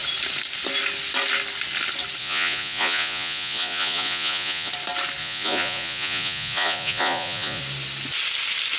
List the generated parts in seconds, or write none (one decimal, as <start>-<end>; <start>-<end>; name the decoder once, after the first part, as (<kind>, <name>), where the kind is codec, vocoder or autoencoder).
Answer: 2.2-4.7 (vocoder, Vocos); 5.2-7.6